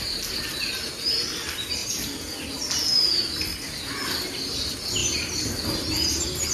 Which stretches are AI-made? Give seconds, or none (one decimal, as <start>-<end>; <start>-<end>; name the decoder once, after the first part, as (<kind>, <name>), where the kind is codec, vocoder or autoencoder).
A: none